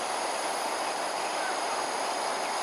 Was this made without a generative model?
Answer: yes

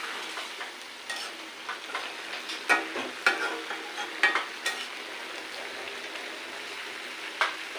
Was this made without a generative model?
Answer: yes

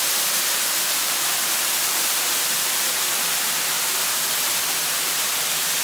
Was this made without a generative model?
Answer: no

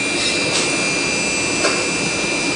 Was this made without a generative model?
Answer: yes